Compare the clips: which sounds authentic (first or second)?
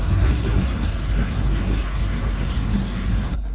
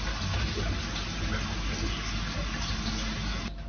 second